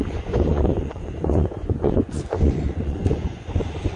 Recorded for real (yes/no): no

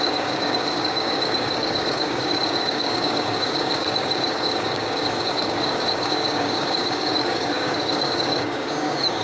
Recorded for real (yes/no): no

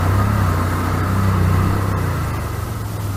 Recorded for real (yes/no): yes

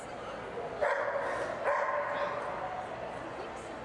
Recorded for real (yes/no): yes